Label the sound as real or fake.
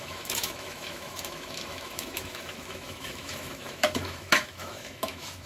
fake